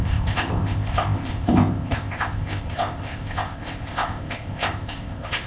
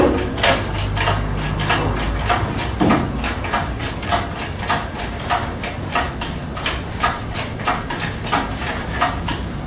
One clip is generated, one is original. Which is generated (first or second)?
first